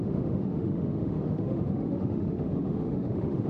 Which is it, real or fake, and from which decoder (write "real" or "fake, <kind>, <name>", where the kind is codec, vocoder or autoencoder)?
fake, autoencoder, DAC-VAE